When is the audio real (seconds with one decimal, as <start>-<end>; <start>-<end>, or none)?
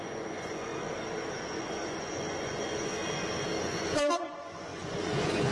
0.7-1.5; 3.0-3.6